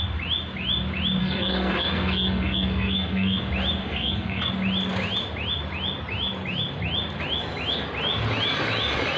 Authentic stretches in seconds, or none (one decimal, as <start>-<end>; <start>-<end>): 0.0-1.2; 3.4-3.8; 4.5-9.2